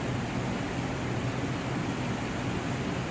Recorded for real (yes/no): yes